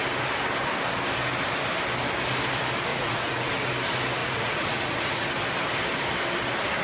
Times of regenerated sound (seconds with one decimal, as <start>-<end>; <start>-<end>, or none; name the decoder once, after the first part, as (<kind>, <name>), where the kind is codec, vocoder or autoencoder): 2.9-3.5 (vocoder, Vocos); 4.2-5.3